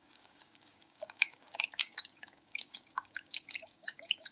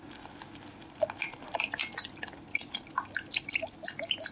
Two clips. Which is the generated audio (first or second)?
first